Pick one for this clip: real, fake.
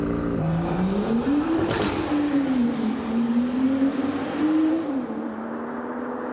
fake